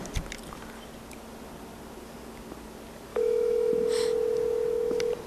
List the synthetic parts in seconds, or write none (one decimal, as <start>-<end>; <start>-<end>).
3.1-3.7